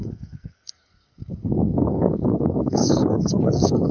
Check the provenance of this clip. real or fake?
fake